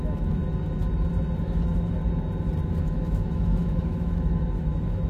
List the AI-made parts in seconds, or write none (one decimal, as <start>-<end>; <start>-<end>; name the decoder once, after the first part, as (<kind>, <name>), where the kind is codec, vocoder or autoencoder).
0.0-0.4 (autoencoder, DAC-VAE); 1.4-2.0; 2.8-5.1